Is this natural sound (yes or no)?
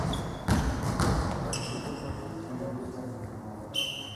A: yes